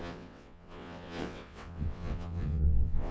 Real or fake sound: fake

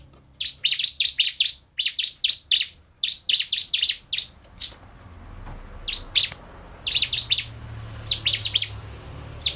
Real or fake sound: real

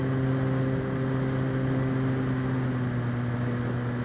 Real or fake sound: real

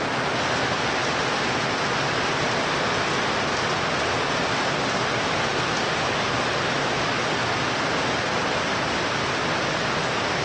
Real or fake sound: real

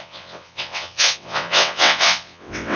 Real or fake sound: fake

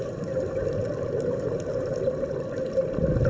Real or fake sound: real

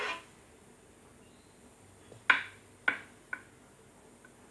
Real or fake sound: real